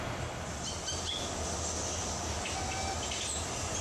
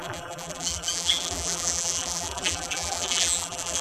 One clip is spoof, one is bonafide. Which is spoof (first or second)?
second